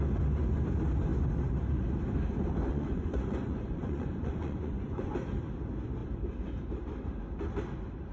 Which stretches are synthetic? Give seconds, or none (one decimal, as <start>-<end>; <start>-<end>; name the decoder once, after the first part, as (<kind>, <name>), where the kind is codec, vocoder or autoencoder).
2.7-5.1 (vocoder, Vocos)